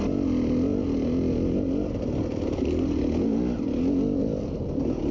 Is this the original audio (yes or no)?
yes